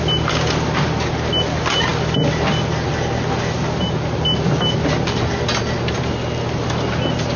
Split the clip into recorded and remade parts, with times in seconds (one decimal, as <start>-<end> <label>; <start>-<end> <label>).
0.0-7.4 recorded